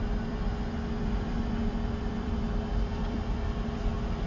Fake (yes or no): yes